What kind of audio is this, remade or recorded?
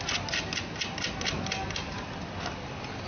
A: recorded